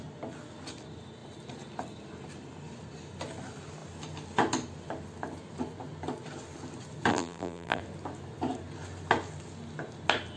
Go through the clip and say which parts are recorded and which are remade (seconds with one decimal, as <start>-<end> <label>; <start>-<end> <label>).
0.0-7.1 recorded; 7.1-7.8 remade; 7.8-10.4 recorded